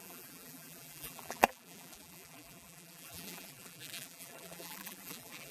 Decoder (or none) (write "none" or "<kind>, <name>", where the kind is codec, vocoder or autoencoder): vocoder, BigVGAN v2